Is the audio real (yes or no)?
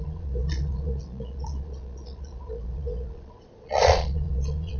no